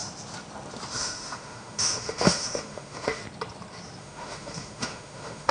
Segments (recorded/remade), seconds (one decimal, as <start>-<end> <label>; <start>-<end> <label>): 0.0-0.9 recorded; 0.9-3.2 remade; 3.2-4.0 recorded; 4.0-5.5 remade